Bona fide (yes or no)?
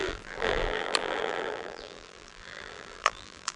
no